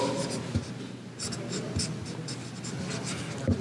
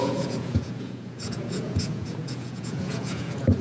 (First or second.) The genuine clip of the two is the first